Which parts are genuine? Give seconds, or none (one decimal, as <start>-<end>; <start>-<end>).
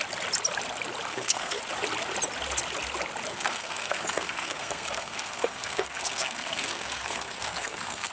0.0-1.1; 1.6-3.3